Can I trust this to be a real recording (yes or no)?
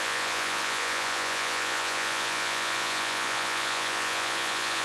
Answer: no